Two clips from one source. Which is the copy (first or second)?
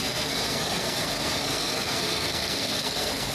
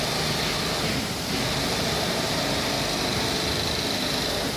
first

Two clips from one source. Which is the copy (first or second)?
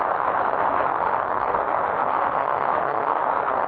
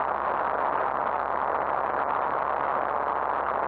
first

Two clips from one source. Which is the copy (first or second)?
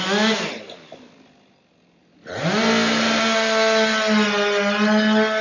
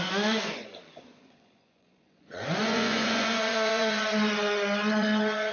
second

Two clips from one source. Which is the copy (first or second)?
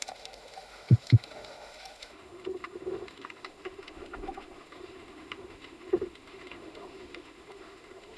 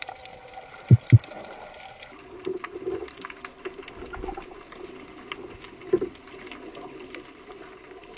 first